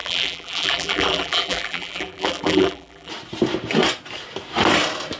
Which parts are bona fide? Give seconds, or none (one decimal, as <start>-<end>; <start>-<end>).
3.1-5.2